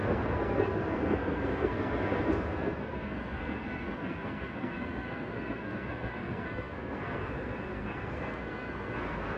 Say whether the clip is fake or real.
fake